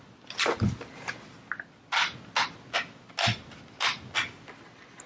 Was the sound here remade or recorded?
recorded